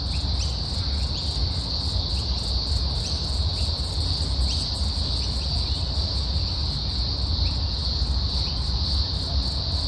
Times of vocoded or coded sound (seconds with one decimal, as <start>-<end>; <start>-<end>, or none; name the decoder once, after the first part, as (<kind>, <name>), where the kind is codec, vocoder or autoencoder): none